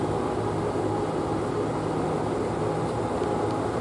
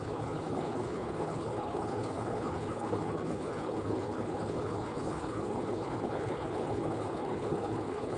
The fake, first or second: second